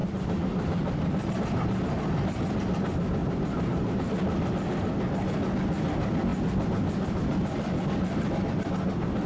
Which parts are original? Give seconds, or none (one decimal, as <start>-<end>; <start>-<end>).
1.3-3.2; 4.1-9.3